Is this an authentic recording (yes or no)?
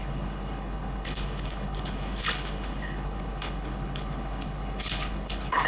no